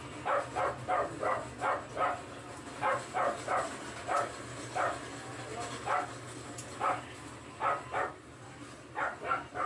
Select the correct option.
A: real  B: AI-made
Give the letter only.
A